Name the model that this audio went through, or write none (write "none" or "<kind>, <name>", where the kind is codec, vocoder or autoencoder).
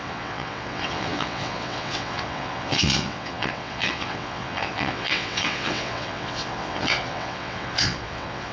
vocoder, WaveNeXt